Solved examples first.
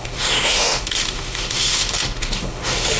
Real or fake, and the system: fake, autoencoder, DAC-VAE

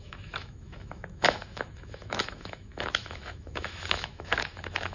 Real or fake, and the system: fake, autoencoder, DAC-VAE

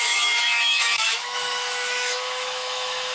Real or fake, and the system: fake, autoencoder, DAC-VAE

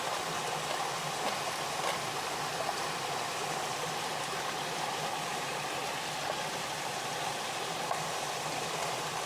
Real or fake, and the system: real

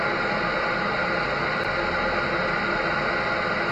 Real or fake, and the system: real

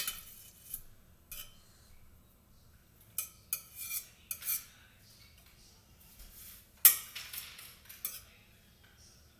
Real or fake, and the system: real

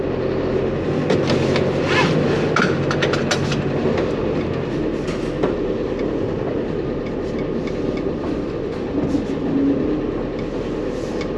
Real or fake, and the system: real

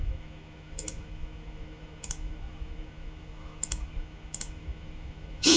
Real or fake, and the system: fake, autoencoder, DAC-VAE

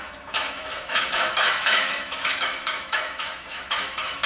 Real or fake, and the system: fake, autoencoder, DAC-VAE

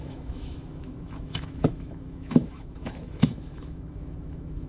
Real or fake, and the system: fake, autoencoder, DAC-VAE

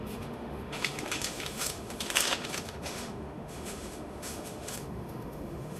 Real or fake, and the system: fake, autoencoder, DAC-VAE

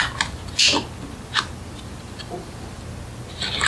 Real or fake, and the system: real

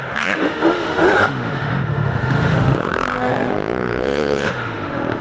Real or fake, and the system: fake, autoencoder, DAC-VAE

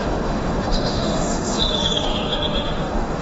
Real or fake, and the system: fake, autoencoder, DAC-VAE